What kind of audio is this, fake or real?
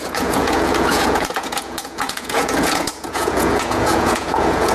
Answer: fake